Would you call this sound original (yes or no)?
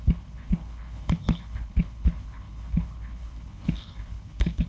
no